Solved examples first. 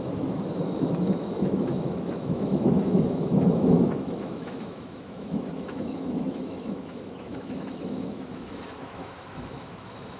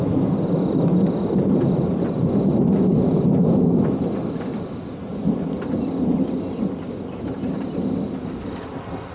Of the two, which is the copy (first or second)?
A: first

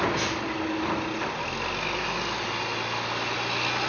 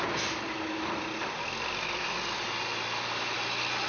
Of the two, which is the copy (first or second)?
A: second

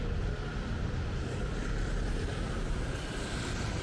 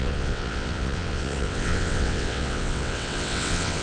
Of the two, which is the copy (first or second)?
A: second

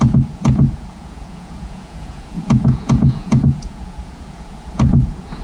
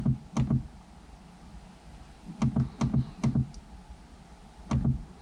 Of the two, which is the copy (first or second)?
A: first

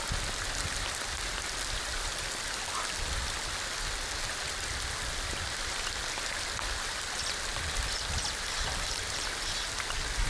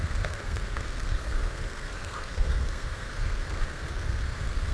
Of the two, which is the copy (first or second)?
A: second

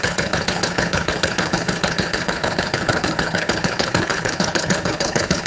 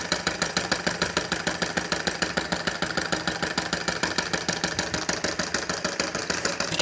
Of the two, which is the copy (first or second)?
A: first